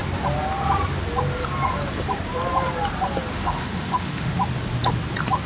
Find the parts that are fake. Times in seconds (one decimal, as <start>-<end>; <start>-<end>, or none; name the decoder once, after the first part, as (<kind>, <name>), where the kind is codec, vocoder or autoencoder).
3.3-4.3 (autoencoder, DAC-VAE)